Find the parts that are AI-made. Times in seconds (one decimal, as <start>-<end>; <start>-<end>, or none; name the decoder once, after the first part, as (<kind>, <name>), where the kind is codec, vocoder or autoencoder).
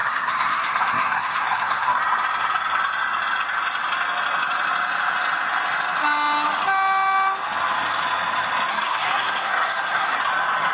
0.0-2.0 (codec, SNAC); 8.7-10.2